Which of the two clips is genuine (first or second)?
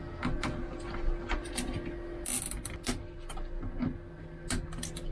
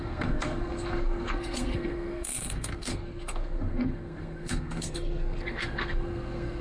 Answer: first